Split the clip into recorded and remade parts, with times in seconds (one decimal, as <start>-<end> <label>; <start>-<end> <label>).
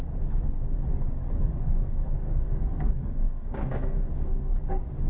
0.0-1.4 recorded; 1.4-4.5 remade; 4.5-5.1 recorded